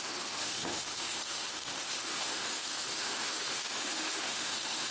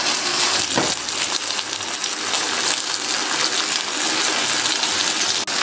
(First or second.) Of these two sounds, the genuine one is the second